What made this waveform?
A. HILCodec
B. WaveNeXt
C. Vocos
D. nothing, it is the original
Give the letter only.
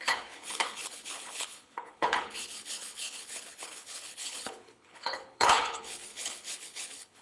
A